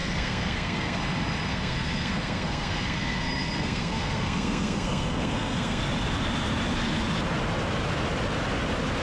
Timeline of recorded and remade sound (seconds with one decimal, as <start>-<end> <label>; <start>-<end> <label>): 0.0-1.0 remade; 1.0-1.5 recorded; 1.5-5.8 remade; 5.8-9.0 recorded